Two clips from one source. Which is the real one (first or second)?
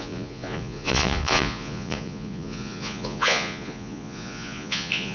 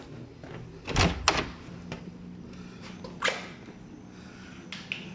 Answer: second